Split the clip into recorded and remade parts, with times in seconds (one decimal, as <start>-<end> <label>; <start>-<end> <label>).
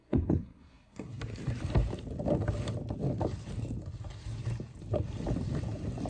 0.0-1.2 remade; 1.2-6.1 recorded